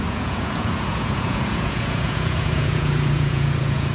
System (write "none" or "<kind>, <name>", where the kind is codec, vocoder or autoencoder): vocoder, Vocos